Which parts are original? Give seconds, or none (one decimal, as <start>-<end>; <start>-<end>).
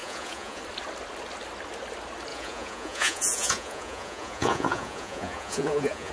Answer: 0.6-2.3